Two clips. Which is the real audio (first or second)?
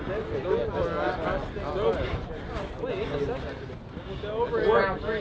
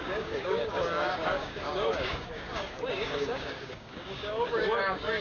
first